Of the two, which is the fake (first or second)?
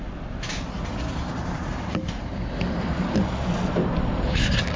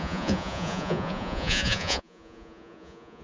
second